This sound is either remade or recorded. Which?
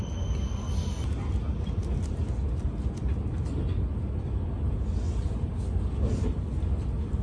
recorded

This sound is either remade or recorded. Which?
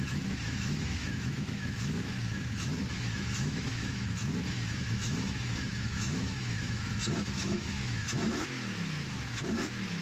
remade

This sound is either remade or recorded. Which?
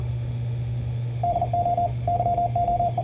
remade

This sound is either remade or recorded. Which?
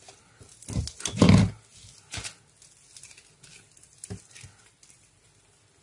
recorded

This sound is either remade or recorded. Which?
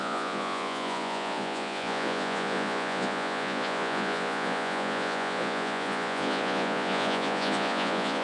remade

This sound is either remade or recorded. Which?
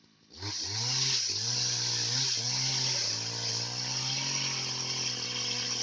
recorded